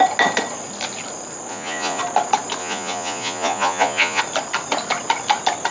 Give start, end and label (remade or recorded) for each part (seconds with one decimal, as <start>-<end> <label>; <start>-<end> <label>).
0.0-1.5 recorded; 1.5-2.0 remade; 2.0-2.6 recorded; 2.6-4.2 remade; 4.2-5.7 recorded